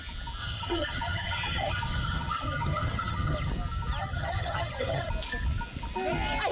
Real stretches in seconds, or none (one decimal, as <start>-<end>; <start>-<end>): 0.0-0.4; 3.5-4.0; 5.1-6.5